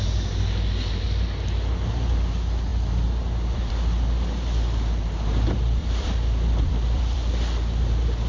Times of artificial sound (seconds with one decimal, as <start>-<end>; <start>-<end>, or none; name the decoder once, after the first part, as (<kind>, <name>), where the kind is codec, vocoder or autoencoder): 2.7-3.7 (vocoder, BigVGAN v2); 5.8-7.3